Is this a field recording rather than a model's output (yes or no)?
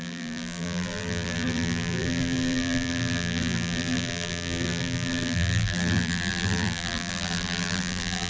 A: no